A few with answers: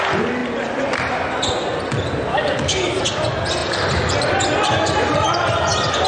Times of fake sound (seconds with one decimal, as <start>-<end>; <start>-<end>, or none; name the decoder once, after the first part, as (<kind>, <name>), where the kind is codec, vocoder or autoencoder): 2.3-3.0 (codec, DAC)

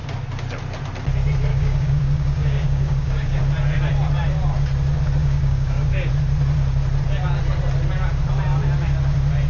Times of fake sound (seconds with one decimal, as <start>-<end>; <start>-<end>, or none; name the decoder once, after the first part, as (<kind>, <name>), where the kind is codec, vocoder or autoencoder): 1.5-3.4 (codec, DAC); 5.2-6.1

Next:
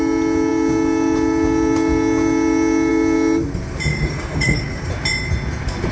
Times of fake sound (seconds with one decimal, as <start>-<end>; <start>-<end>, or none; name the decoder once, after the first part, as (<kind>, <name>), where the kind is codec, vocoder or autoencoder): 3.9-4.9 (codec, DAC)

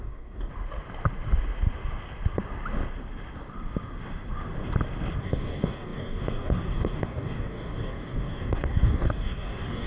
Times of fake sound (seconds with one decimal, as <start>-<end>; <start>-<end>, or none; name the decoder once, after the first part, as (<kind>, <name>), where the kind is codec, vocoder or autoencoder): 0.0-0.5 (codec, DAC); 5.2-9.9

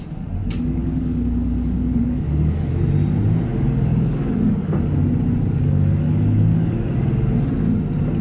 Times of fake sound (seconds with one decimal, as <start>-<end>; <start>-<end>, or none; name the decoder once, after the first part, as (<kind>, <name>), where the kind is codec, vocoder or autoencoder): 0.4-2.7 (codec, DAC); 3.5-5.0; 5.4-6.9

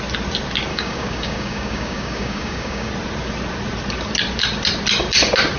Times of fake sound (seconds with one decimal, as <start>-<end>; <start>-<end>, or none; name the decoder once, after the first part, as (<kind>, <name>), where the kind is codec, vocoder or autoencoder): 0.7-2.9 (codec, DAC)

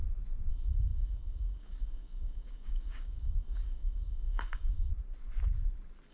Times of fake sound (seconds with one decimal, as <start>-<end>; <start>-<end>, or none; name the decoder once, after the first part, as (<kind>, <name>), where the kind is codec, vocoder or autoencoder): 0.5-4.9 (codec, DAC)

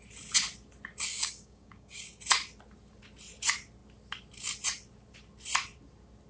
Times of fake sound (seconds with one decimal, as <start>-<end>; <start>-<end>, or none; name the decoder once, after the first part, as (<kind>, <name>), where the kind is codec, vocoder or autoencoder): 1.1-2.2 (codec, DAC)